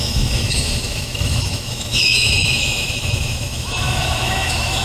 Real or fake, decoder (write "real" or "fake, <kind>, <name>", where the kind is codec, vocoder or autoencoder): fake, autoencoder, DAC-VAE